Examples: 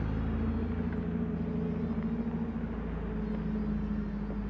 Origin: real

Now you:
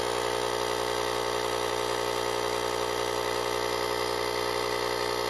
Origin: real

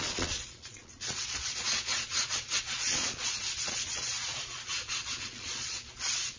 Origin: fake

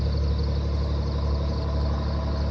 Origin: real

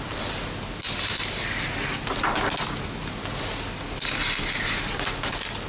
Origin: real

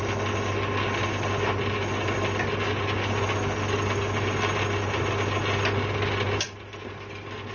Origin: real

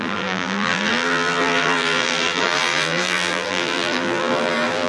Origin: fake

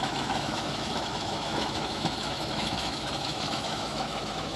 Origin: fake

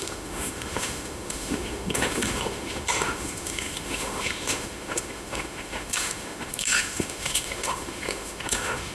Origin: fake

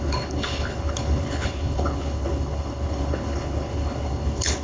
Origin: fake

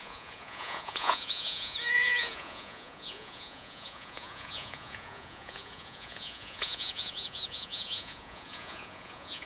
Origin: fake